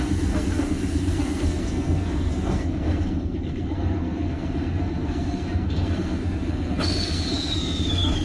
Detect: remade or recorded remade